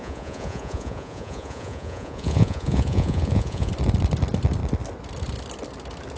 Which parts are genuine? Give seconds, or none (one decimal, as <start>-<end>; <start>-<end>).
3.7-6.2